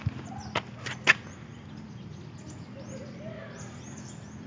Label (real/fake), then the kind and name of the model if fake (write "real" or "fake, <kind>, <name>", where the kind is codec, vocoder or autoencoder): real